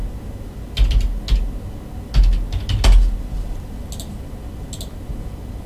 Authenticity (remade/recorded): recorded